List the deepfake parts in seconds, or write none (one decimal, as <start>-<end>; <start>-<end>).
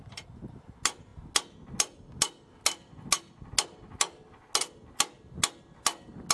none